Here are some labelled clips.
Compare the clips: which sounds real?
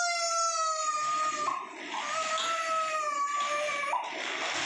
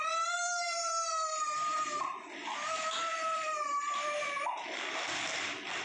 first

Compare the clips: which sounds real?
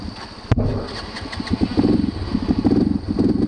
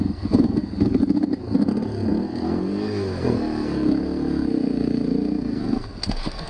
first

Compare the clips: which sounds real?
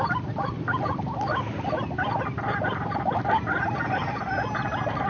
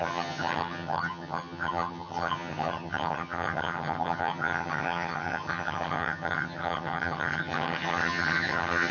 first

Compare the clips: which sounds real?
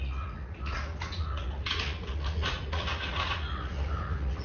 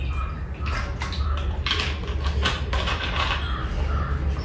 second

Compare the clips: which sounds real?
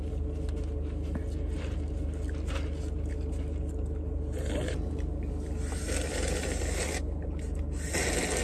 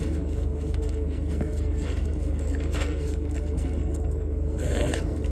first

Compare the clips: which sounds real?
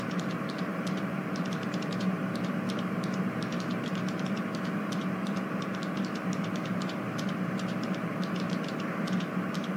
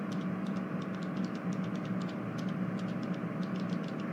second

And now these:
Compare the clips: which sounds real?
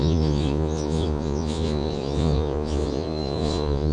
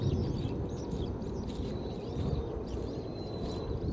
second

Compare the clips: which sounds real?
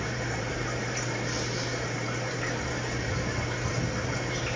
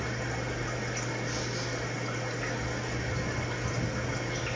second